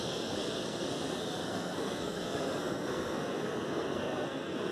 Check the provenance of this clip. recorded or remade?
remade